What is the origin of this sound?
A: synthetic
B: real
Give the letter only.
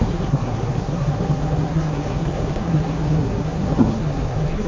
A